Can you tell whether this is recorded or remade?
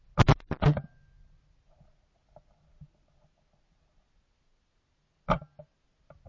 recorded